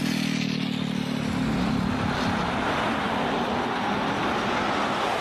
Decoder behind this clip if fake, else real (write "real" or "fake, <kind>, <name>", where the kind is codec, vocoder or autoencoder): real